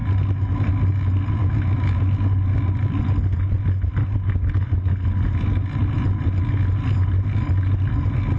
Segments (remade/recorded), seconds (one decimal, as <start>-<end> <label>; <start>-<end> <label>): 0.0-8.4 recorded